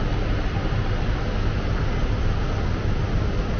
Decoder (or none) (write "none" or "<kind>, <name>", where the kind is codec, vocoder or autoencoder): none